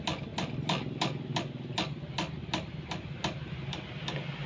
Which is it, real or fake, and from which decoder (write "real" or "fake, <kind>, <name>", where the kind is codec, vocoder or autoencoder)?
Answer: real